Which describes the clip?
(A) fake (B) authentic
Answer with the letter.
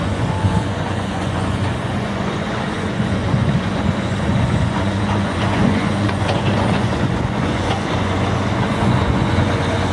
A